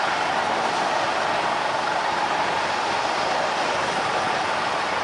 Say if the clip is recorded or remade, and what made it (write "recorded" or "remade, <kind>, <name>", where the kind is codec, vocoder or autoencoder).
remade, vocoder, BigVGAN v2